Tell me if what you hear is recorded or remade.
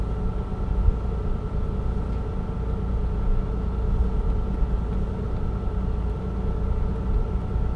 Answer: recorded